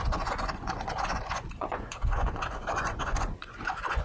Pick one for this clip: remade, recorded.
remade